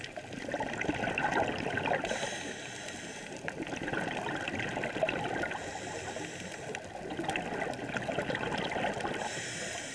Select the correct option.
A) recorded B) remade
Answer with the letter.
A